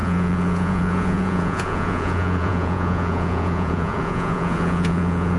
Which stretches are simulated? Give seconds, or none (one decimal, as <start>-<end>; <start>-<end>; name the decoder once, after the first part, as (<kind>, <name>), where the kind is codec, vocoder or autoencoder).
0.0-5.4 (vocoder, Vocos)